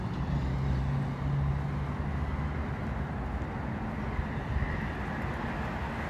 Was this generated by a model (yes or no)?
no